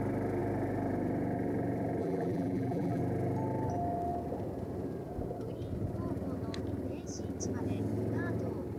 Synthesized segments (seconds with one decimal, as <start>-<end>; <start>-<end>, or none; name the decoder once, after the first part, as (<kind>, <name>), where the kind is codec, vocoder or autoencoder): 2.0-3.0 (vocoder, BigVGAN v2)